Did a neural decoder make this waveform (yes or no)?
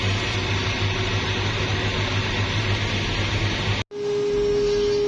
no